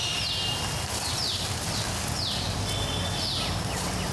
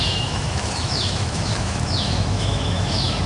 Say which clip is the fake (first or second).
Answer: second